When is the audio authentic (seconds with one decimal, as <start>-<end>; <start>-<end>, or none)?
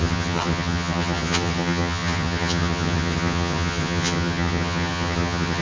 none